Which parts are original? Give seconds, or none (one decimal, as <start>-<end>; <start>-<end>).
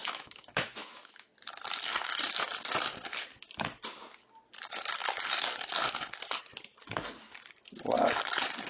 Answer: 1.3-8.7